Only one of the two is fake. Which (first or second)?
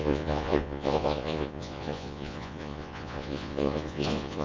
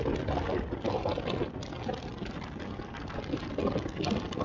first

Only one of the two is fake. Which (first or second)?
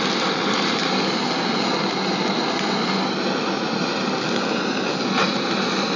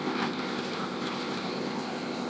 second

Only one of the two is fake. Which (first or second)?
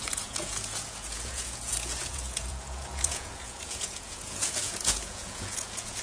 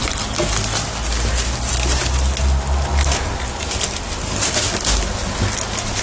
first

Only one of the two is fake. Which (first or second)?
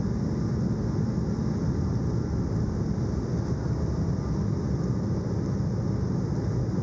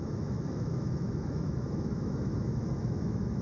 second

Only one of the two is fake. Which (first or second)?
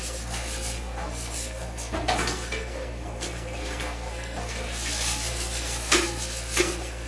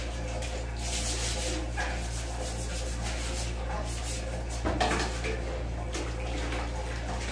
first